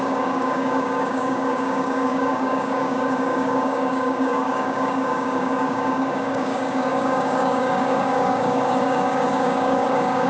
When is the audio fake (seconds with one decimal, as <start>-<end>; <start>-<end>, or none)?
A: 0.0-10.3